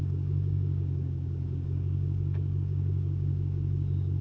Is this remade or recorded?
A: remade